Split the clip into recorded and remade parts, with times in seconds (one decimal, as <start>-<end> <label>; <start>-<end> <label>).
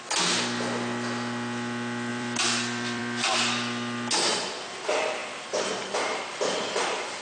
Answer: 0.0-2.1 recorded; 2.1-3.0 remade; 3.0-7.2 recorded